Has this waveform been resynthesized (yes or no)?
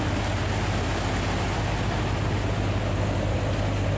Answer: no